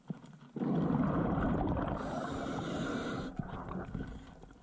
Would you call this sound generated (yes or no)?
no